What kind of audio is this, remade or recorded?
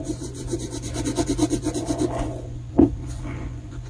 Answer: remade